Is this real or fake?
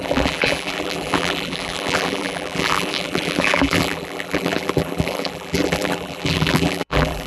fake